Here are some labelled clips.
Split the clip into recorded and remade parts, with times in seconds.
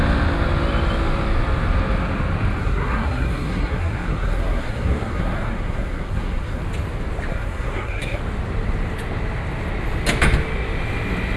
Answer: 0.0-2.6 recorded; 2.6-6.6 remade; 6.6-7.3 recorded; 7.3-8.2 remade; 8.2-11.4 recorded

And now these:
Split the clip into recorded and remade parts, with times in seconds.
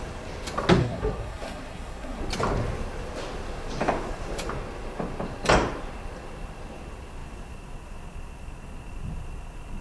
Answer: 0.0-0.8 recorded; 0.8-2.2 remade; 2.2-9.8 recorded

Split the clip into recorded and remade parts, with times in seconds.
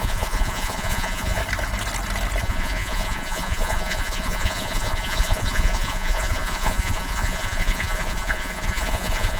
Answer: 0.0-1.4 remade; 1.4-2.4 recorded; 2.4-9.4 remade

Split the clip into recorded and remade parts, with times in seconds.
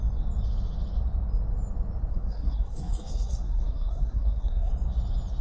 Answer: 0.0-2.1 recorded; 2.1-4.7 remade; 4.7-5.4 recorded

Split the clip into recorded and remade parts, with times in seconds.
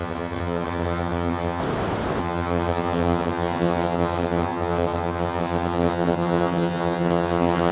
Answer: 0.0-1.6 remade; 1.6-2.2 recorded; 2.2-7.7 remade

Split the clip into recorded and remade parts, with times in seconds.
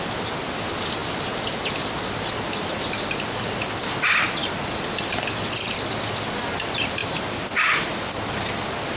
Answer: 0.0-4.4 recorded; 4.4-5.0 remade; 5.0-9.0 recorded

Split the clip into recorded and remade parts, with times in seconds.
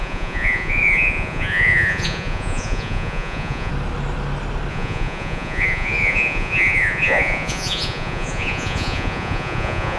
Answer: 0.0-3.7 remade; 3.7-4.7 recorded; 4.7-10.0 remade